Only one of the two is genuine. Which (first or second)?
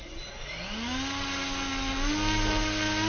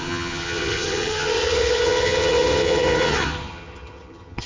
first